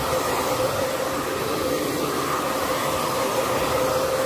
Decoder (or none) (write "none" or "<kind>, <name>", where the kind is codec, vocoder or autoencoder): none